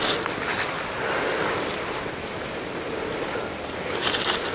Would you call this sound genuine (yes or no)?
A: yes